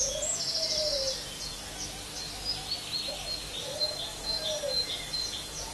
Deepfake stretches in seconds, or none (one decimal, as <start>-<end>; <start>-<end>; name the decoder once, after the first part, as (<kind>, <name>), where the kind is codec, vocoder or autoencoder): 0.0-1.6 (vocoder, Vocos); 3.6-5.7